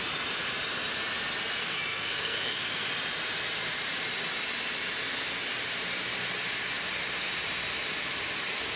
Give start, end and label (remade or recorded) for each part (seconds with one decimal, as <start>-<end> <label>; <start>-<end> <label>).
0.0-1.6 recorded; 1.6-2.9 remade; 2.9-8.8 recorded